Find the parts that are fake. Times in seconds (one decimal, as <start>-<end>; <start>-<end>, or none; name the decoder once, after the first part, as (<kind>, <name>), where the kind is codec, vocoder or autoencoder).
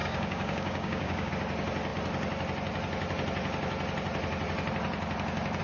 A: 0.0-1.3 (codec, DAC)